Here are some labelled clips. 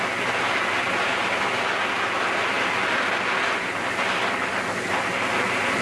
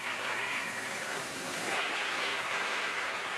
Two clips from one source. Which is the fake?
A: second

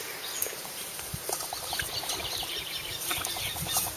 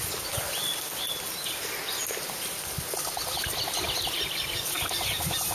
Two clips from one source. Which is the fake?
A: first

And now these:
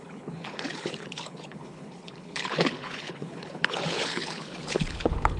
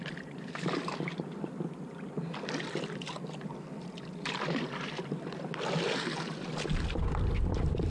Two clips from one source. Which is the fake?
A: first